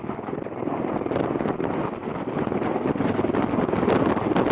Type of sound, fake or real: real